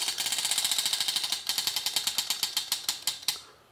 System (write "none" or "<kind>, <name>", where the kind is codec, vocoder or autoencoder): none